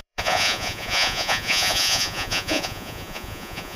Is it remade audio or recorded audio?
remade